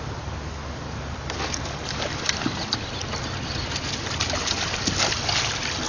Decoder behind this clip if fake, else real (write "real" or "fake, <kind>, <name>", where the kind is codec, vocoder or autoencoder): real